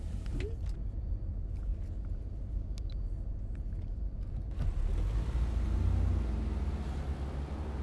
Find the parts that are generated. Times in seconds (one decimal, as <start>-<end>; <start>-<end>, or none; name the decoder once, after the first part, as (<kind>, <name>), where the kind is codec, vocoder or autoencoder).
none